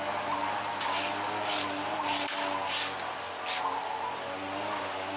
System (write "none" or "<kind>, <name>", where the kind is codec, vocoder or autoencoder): none